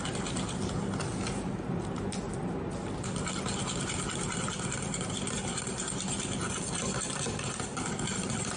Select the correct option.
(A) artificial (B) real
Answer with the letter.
B